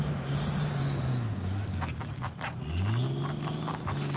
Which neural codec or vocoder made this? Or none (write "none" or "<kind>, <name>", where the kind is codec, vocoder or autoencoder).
none